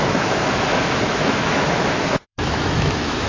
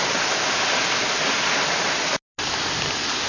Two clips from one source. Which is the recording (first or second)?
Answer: second